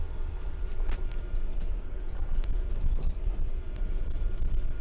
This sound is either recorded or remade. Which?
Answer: remade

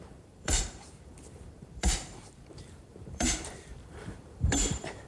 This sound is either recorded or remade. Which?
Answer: remade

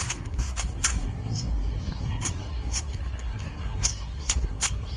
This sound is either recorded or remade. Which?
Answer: remade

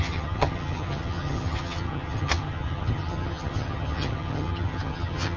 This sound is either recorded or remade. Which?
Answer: remade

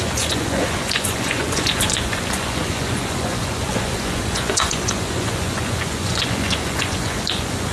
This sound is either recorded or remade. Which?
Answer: remade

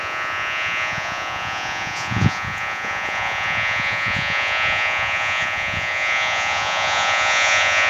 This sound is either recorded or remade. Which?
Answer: remade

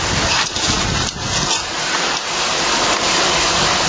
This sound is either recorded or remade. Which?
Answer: recorded